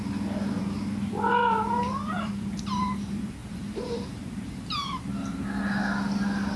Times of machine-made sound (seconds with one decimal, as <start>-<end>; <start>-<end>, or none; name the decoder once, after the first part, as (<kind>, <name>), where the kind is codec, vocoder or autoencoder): 1.4-2.6 (vocoder, BigVGAN v2); 3.4-5.0

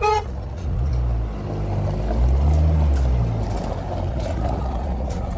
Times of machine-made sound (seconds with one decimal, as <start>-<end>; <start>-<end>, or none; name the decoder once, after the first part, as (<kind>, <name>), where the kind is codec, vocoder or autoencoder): 0.0-0.9 (vocoder, Vocos); 4.1-5.4

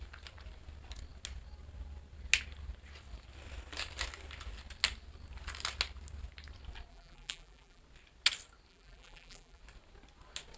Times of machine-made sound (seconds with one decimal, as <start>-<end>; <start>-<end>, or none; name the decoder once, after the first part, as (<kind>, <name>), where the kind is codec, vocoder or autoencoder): 6.9-7.8 (vocoder, BigVGAN v2); 8.7-9.6

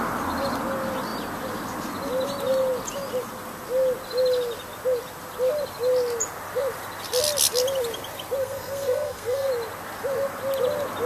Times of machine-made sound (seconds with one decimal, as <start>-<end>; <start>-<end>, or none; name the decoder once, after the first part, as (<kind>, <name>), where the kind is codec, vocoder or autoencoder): 8.4-9.5 (codec, SNAC)

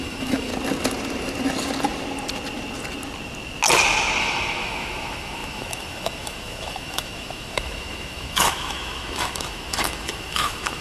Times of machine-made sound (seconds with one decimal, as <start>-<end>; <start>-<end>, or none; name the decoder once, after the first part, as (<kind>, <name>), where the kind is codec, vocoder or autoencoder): 0.0-0.5 (autoencoder, DAC-VAE); 4.2-10.8

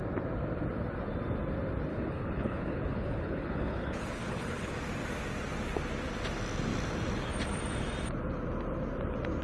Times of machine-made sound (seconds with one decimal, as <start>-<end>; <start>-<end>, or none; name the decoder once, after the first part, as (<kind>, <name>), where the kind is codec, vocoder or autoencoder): 1.9-4.7 (codec, HILCodec)